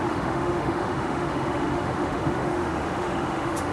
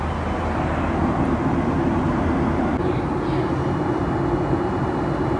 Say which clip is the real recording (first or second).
second